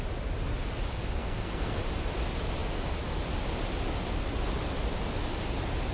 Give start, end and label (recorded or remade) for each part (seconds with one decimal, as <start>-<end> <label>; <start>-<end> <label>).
0.0-1.2 recorded; 1.2-1.8 remade; 1.8-5.9 recorded